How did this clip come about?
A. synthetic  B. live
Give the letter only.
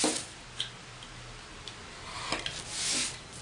B